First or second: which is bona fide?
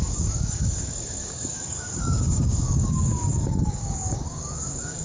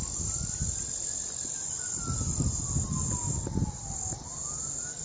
second